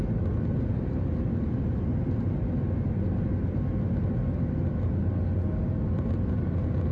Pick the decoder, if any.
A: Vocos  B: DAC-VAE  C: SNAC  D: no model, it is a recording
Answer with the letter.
D